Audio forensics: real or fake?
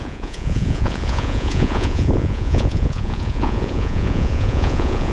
fake